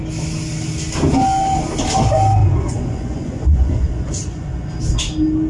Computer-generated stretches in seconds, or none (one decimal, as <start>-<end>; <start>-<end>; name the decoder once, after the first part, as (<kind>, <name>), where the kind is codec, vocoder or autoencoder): 2.4-4.7 (vocoder, Vocos)

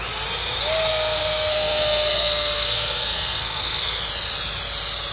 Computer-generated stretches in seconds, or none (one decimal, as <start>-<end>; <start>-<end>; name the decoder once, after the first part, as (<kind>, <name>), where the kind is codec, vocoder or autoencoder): 0.9-4.0 (codec, SNAC)

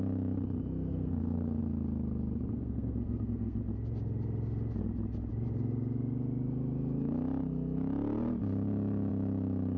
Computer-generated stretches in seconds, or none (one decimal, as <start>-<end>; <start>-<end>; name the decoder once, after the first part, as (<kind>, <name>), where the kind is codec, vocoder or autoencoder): 0.9-1.6 (codec, SNAC); 2.5-3.6

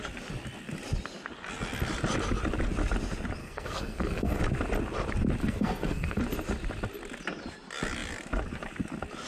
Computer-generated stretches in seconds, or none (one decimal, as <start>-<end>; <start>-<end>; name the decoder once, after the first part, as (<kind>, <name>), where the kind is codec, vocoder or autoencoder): 3.4-4.4 (codec, SNAC); 5.4-6.2

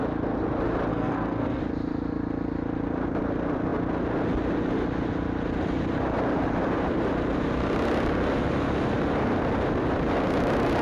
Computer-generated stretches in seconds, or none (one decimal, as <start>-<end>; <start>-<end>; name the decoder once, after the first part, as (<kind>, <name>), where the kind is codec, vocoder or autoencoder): 0.9-1.6 (codec, SNAC)

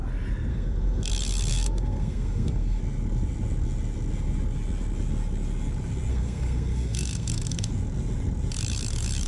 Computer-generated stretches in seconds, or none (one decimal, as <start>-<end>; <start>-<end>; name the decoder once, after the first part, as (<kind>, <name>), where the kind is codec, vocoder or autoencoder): 0.5-1.1 (codec, SNAC); 1.5-2.8; 6.1-7.7

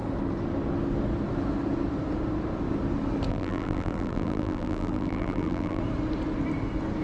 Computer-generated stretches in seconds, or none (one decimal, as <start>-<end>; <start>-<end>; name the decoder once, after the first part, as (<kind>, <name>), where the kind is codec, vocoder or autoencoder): 3.3-5.8 (vocoder, BigVGAN v2)

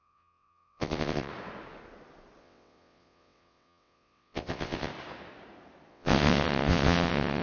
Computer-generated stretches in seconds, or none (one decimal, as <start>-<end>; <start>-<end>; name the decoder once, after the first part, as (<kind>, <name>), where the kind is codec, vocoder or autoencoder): 0.0-1.3 (vocoder, WaveNeXt); 2.4-4.9; 5.9-7.4